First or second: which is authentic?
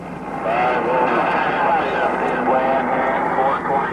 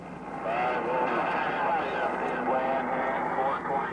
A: second